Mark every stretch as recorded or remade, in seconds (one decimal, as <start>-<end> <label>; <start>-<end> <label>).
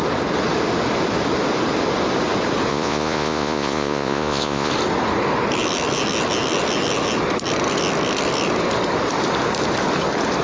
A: 0.0-2.7 recorded; 2.7-4.7 remade; 4.7-10.4 recorded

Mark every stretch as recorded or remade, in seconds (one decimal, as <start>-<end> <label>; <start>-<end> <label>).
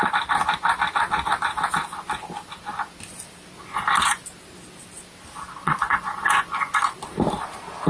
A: 0.0-5.6 recorded; 5.6-6.7 remade; 6.7-7.9 recorded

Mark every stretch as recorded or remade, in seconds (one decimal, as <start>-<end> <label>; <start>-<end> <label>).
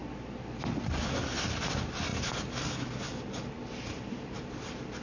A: 0.0-5.0 recorded